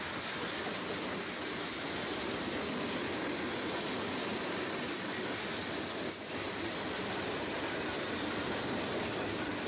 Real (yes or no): yes